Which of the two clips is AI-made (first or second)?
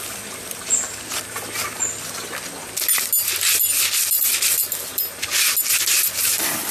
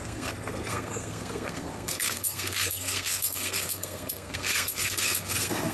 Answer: second